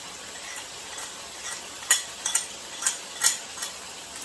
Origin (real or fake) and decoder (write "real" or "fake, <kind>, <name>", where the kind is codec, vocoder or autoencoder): real